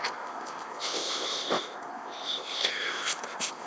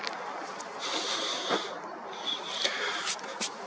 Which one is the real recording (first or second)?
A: second